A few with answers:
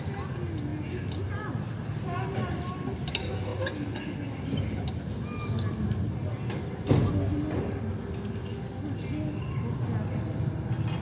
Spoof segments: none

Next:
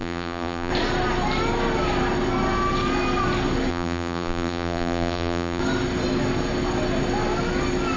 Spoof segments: 0.0-0.7 (vocoder, BigVGAN v2); 3.7-5.6

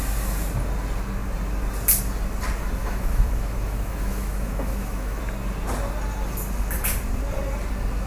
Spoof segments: 2.8-5.2 (autoencoder, DAC-VAE)

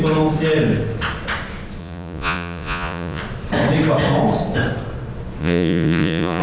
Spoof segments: 1.8-3.2 (vocoder, Vocos); 5.4-6.4

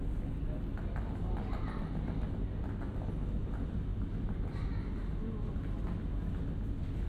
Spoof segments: none